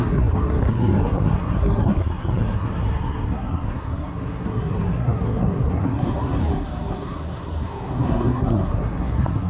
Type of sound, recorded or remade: remade